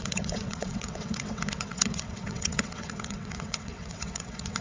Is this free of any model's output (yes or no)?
no